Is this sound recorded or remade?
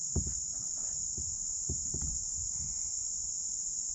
remade